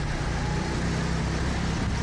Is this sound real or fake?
real